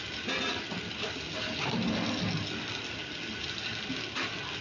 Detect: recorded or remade recorded